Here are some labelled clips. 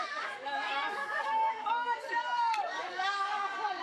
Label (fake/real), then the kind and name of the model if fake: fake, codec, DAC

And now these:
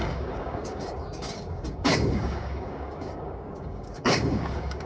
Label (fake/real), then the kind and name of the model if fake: fake, codec, DAC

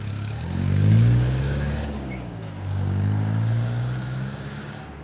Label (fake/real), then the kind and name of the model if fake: fake, codec, DAC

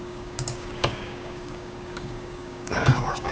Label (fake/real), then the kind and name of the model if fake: fake, codec, DAC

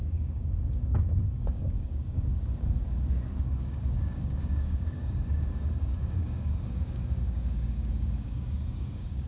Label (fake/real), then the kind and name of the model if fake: fake, codec, DAC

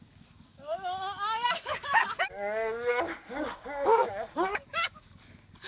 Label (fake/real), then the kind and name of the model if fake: fake, codec, DAC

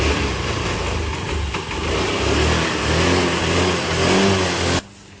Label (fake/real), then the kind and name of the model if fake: real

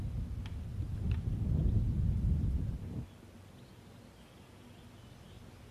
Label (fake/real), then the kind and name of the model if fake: real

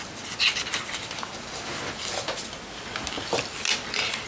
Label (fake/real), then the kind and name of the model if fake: real